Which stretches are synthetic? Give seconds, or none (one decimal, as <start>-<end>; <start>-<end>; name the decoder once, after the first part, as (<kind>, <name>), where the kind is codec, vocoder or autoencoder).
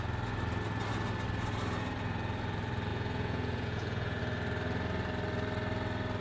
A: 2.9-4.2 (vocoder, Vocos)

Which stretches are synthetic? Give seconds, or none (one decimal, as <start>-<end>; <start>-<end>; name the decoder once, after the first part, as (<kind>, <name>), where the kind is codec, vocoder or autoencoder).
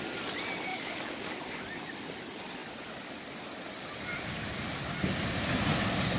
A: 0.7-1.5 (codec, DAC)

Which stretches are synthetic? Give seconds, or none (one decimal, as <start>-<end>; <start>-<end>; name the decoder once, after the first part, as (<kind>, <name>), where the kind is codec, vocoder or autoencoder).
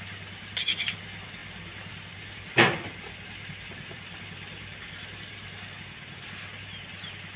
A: none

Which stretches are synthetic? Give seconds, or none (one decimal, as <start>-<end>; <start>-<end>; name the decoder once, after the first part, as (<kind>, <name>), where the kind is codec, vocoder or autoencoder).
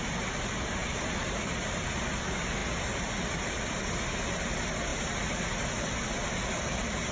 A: none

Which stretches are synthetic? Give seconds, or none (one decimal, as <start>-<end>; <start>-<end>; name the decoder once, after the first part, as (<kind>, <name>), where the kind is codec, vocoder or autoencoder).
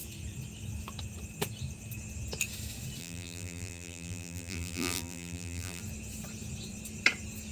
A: 3.0-5.8 (vocoder, BigVGAN v2)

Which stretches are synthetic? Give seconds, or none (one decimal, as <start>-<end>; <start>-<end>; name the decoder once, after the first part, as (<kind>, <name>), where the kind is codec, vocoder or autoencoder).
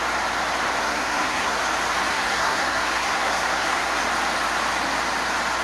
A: 0.8-1.6 (codec, SNAC); 2.1-4.0